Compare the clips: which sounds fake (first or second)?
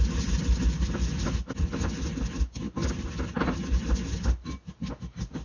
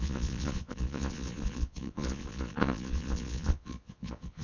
second